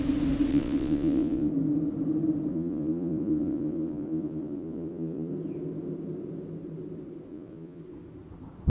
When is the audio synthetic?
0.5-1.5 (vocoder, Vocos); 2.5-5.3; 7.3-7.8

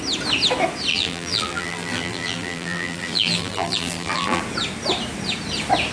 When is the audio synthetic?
0.9-4.4 (vocoder, BigVGAN v2)